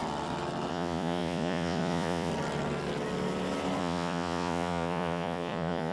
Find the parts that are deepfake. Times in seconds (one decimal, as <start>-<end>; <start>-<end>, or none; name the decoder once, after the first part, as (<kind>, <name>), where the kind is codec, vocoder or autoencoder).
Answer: 0.7-2.3 (vocoder, Vocos); 3.8-5.9